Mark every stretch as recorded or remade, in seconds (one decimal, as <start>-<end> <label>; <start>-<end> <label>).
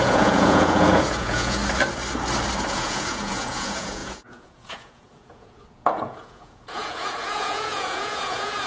0.0-1.6 remade; 1.6-2.7 recorded; 2.7-8.7 remade